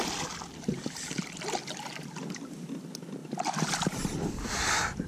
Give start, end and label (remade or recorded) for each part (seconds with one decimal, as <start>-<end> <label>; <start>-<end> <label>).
0.0-5.1 recorded